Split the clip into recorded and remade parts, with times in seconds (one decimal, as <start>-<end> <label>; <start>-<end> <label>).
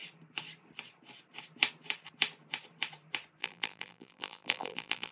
0.0-3.4 recorded; 3.4-5.1 remade